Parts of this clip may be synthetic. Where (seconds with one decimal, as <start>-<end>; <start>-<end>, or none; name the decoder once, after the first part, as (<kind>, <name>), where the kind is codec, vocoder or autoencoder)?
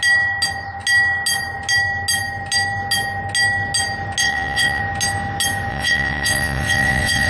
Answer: 4.2-4.8 (vocoder, WaveNeXt); 5.7-7.3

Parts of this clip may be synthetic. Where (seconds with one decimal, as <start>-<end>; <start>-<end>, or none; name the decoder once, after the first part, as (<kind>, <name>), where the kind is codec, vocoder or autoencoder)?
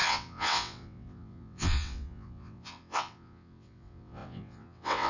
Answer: 0.0-5.1 (vocoder, WaveNeXt)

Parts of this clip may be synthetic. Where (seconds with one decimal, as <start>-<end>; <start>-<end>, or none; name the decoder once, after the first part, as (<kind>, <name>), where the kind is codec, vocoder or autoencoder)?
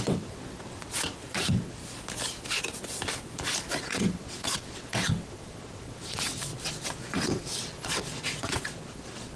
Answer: 0.0-1.8 (vocoder, WaveNeXt); 3.8-9.4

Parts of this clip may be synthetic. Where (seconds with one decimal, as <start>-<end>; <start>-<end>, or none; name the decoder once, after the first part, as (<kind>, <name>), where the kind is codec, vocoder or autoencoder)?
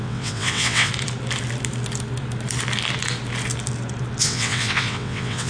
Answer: 0.0-0.9 (vocoder, WaveNeXt); 4.2-5.5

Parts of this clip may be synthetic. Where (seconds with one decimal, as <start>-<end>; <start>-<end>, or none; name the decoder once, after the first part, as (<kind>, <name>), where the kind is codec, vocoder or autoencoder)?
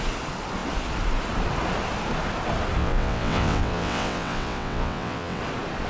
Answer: 2.8-5.4 (vocoder, WaveNeXt)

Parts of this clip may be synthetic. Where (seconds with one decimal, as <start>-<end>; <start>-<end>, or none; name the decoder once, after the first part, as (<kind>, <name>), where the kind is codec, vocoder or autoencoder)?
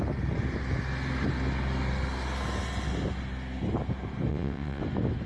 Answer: 4.3-4.8 (vocoder, WaveNeXt)